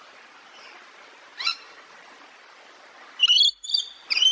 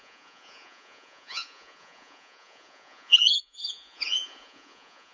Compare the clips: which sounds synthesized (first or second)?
second